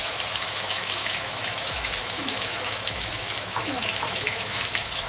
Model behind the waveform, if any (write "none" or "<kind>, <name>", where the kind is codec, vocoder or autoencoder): autoencoder, DAC-VAE